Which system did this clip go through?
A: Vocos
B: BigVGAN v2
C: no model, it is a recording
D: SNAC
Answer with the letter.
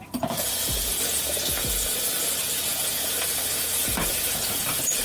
A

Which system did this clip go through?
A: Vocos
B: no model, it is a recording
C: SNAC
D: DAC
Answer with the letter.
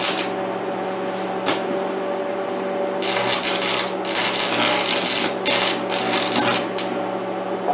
B